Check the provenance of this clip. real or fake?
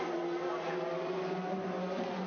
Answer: real